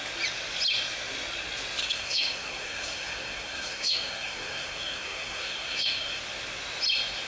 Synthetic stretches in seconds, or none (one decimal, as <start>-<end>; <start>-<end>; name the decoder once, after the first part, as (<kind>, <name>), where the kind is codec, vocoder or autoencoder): 1.8-6.2 (codec, SNAC)